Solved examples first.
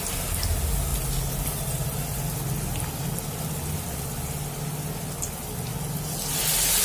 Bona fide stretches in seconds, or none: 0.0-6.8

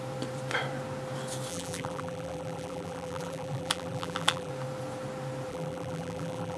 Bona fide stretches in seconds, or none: 0.0-1.5; 4.5-5.5

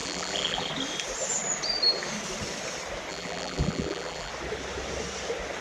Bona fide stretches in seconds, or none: 0.7-3.1; 4.3-5.6

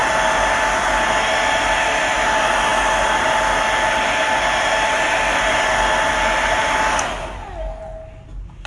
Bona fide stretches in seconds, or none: 0.0-8.7

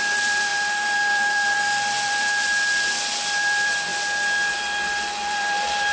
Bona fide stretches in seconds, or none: 3.9-4.5

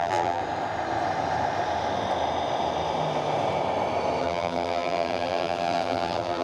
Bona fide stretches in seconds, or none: 0.4-4.2

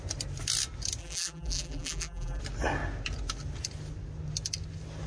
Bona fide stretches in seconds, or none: 0.0-1.0; 2.4-5.1

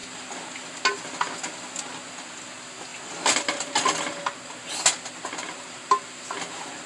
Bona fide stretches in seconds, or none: 0.0-2.9; 3.7-6.9